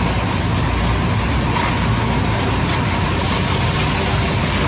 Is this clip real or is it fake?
real